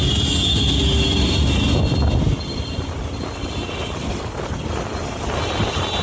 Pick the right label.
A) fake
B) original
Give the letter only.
B